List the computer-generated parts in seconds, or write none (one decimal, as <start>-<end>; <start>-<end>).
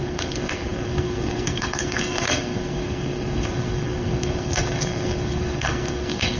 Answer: 0.0-6.4